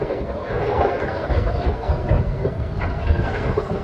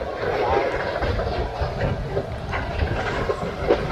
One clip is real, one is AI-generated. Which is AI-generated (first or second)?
first